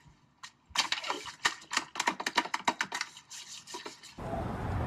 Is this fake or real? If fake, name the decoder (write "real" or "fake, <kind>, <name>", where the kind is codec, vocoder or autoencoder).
real